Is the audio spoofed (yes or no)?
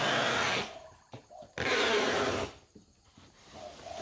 no